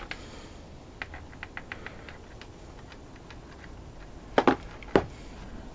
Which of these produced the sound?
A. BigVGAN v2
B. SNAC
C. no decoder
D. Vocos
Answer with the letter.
C